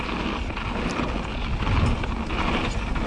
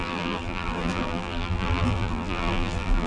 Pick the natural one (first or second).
first